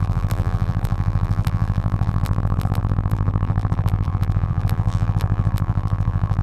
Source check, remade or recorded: remade